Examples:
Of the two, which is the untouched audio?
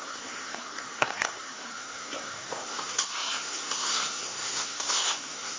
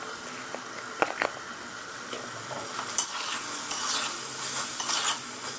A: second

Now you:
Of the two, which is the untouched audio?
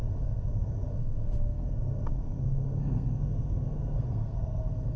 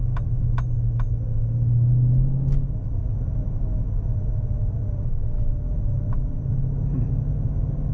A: second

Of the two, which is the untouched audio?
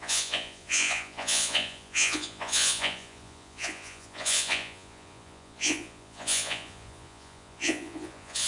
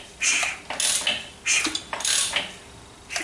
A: second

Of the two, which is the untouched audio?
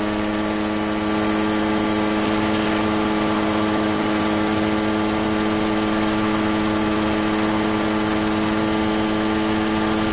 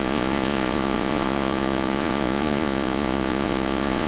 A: first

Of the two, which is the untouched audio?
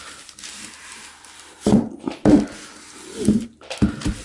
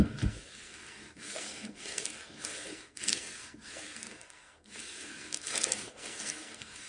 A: first